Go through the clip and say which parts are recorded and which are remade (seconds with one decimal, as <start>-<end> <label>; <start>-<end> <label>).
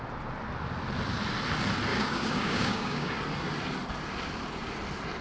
0.0-1.9 recorded; 1.9-3.1 remade; 3.1-5.2 recorded